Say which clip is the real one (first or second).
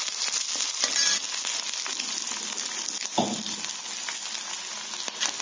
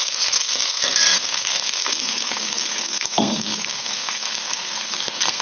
first